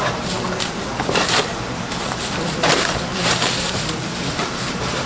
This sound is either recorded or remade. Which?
remade